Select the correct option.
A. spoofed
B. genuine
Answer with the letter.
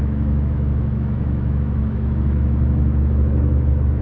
A